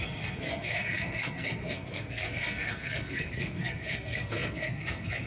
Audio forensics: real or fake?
fake